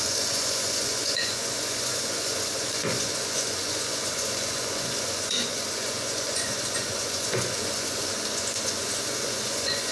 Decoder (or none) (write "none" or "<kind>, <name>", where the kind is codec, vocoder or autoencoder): vocoder, Vocos